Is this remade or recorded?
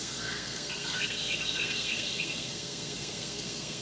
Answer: remade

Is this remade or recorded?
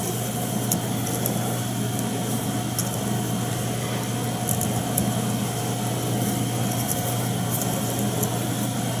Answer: recorded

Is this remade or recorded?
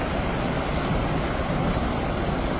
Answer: recorded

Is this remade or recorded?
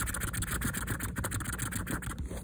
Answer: recorded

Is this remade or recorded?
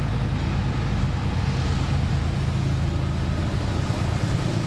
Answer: recorded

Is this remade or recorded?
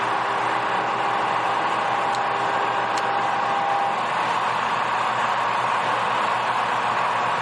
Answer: recorded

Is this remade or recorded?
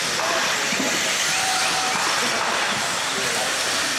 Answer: recorded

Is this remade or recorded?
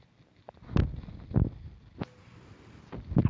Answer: recorded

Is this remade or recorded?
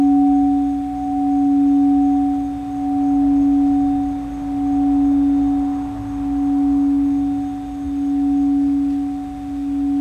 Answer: recorded